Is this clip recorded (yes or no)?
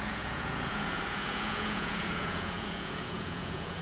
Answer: no